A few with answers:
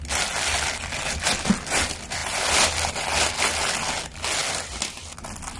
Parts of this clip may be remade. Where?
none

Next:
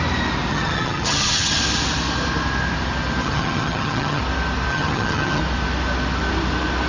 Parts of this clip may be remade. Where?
0.5-1.6 (vocoder, HiFi-GAN); 3.2-4.2; 4.7-5.4

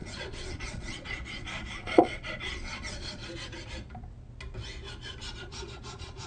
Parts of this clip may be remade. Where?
0.0-3.2 (vocoder, Vocos); 5.4-6.3

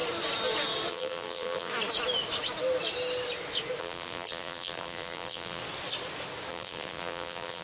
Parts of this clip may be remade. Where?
0.9-1.7 (vocoder, BigVGAN v2); 3.8-5.6; 6.5-7.6